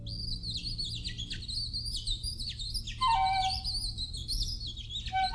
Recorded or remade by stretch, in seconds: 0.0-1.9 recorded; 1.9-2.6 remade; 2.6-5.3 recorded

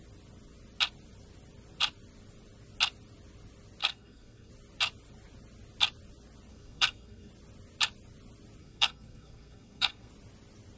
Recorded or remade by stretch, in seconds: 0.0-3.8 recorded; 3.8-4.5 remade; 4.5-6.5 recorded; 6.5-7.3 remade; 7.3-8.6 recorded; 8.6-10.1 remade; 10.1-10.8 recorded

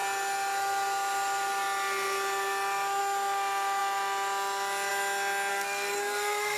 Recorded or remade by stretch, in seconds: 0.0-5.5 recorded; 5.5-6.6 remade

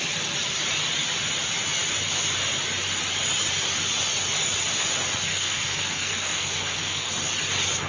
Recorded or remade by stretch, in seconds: 0.0-5.3 recorded; 5.3-7.1 remade; 7.1-7.9 recorded